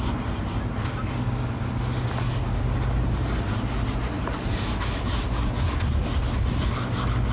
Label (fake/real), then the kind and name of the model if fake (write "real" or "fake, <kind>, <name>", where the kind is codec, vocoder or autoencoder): real